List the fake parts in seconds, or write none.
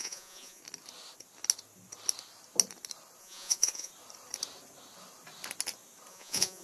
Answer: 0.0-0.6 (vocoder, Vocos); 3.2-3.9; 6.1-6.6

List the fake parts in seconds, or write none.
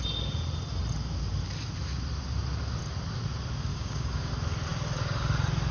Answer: 3.7-4.3 (codec, DAC)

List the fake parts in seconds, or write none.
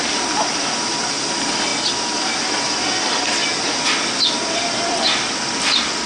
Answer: none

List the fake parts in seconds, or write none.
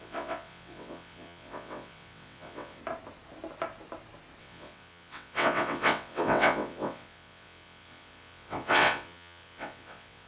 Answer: 0.0-2.8 (vocoder, WaveNeXt); 4.4-10.3